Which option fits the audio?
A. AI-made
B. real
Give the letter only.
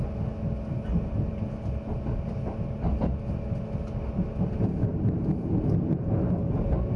B